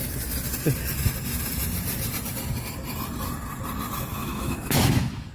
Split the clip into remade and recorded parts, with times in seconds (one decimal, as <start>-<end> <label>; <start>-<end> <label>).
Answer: 0.0-4.1 recorded; 4.1-5.3 remade